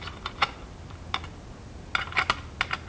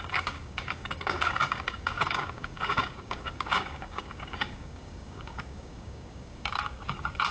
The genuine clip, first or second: first